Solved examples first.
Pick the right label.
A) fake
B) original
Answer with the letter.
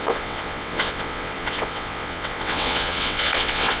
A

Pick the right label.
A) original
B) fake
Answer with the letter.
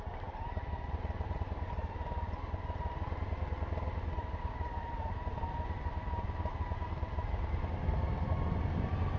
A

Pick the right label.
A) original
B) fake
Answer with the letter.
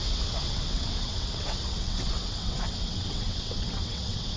B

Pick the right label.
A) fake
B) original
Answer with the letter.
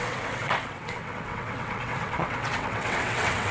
A